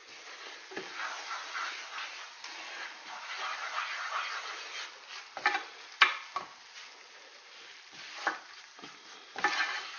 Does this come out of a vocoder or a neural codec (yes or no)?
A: no